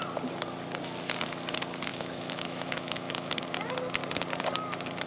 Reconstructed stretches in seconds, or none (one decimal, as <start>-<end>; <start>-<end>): 1.9-3.3